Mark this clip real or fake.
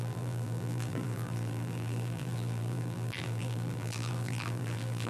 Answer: fake